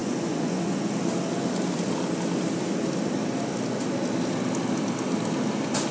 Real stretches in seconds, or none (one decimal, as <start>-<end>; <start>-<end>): 0.9-5.9